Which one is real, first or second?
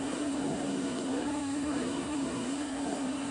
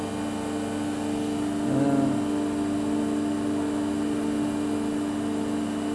second